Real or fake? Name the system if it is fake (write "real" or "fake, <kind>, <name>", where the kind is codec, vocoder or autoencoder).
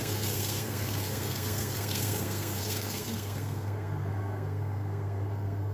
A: fake, codec, SNAC